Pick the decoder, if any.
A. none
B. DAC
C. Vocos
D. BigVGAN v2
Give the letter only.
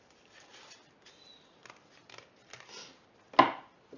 A